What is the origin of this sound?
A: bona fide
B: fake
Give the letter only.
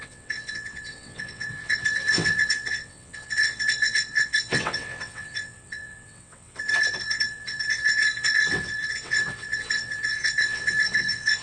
B